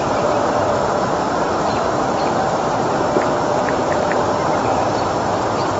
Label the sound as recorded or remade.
remade